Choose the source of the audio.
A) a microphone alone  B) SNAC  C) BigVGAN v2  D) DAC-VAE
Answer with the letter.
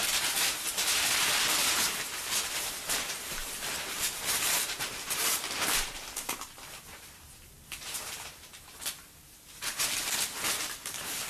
C